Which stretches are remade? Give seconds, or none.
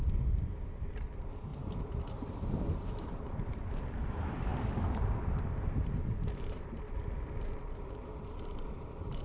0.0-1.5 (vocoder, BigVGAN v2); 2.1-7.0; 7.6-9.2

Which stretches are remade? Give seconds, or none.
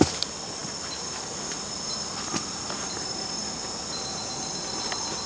none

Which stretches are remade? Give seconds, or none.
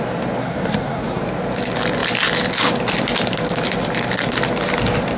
0.4-1.2 (codec, SNAC)